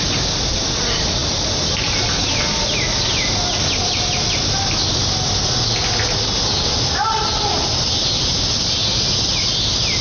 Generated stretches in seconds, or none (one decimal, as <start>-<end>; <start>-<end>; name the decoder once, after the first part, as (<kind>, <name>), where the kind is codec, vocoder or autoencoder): none